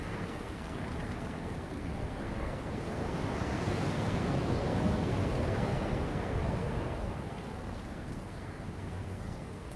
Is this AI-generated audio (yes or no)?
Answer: yes